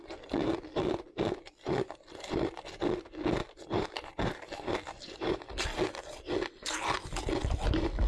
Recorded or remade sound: recorded